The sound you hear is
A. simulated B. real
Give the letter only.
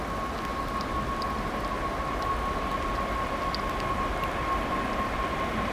B